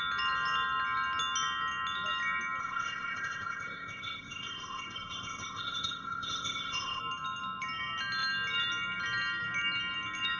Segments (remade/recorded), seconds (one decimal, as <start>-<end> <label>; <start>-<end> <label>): 0.0-2.6 recorded; 2.6-7.0 remade; 7.0-10.4 recorded